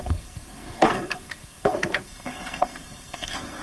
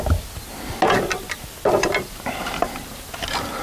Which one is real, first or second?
second